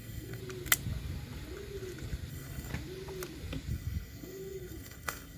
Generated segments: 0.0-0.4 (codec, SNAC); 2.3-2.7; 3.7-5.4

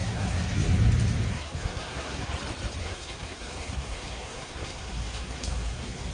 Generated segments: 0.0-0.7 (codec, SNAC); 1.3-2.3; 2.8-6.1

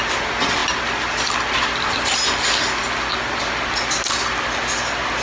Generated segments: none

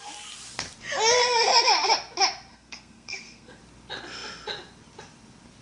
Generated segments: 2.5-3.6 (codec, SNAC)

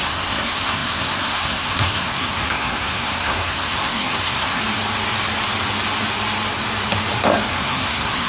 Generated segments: 0.0-4.6 (codec, SNAC); 7.5-8.3

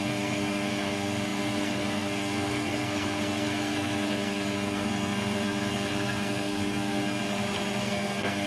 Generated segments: 0.0-7.2 (codec, SNAC); 7.8-8.5